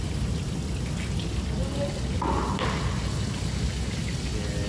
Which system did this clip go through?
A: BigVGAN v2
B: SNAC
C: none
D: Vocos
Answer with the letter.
C